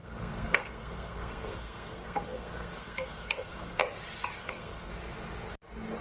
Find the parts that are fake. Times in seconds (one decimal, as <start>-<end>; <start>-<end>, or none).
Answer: 0.0-3.8; 4.4-4.9